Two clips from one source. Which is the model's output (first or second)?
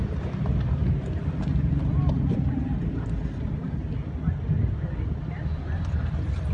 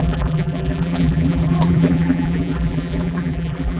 second